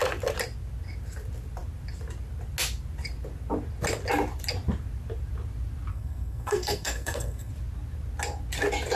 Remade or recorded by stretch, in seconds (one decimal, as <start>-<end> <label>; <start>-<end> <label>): 0.0-5.9 recorded; 5.9-7.5 remade; 7.5-9.0 recorded